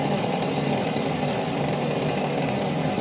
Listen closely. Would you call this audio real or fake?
real